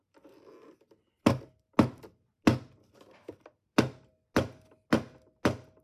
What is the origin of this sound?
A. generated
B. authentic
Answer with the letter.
B